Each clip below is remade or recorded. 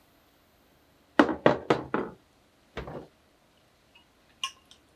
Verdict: recorded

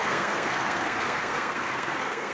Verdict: remade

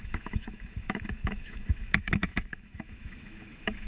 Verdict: remade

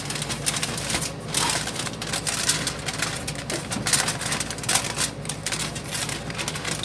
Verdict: recorded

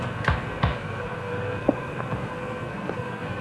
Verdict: remade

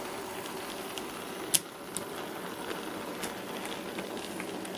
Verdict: recorded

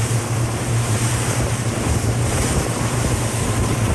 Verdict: remade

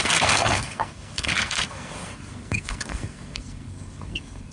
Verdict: remade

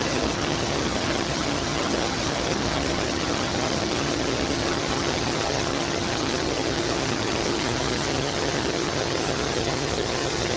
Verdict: remade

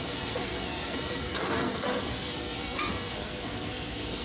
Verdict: remade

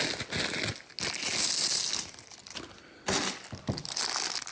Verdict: recorded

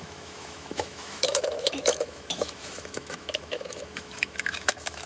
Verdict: remade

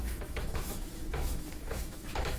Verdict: remade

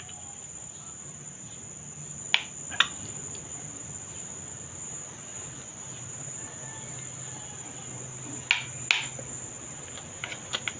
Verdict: recorded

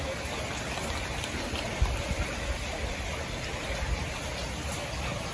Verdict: recorded